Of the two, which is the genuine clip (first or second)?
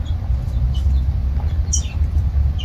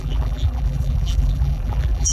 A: first